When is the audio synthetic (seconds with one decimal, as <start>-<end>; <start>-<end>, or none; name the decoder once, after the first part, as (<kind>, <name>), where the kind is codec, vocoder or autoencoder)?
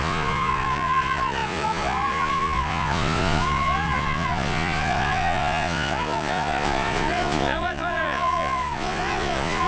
0.0-9.7 (vocoder, Vocos)